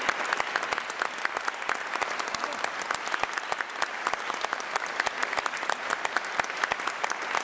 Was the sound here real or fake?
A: real